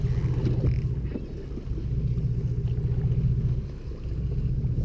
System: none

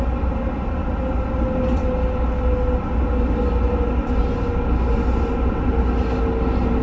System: none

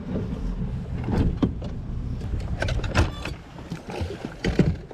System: none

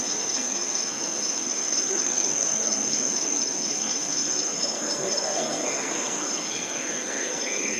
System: codec, SNAC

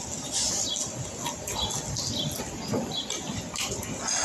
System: none